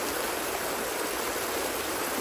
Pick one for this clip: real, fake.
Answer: real